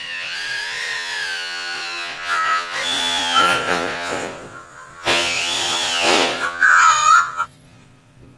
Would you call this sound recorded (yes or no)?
no